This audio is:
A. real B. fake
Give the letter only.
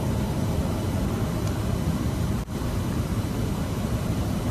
B